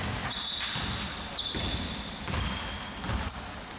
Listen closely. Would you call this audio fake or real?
real